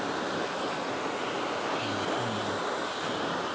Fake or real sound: real